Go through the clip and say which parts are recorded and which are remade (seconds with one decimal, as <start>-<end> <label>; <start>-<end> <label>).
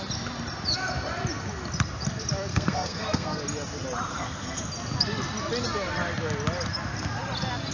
0.0-2.5 recorded; 2.5-3.4 remade; 3.4-4.1 recorded; 4.1-4.6 remade; 4.6-7.7 recorded